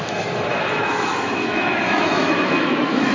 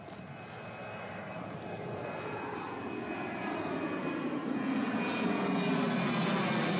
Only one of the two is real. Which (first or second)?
second